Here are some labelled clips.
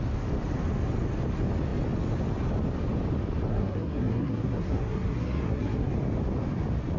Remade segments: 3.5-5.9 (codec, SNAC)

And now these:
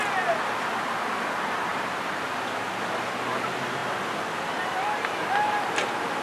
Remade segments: none

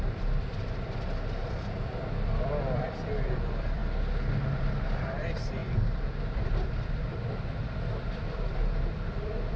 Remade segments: 0.0-3.8 (vocoder, BigVGAN v2); 4.6-9.6

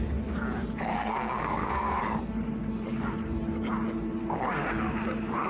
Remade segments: 0.9-2.0 (codec, SNAC)

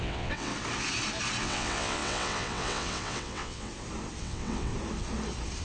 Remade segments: 0.0-0.5 (vocoder, WaveNeXt); 1.4-3.7; 4.2-4.7

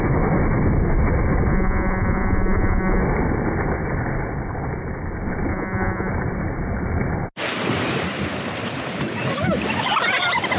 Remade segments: 1.5-3.0 (vocoder, Vocos); 5.5-6.1

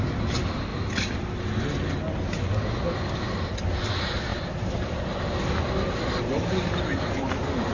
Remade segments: none